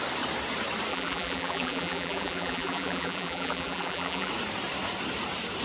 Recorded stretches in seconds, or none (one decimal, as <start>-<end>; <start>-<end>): 0.0-0.9; 4.3-5.6